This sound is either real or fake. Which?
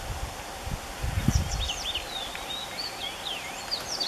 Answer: real